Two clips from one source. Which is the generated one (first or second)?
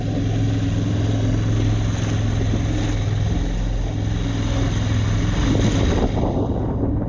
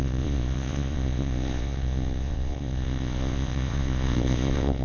second